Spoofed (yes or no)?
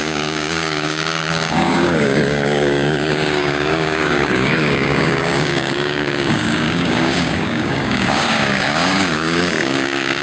yes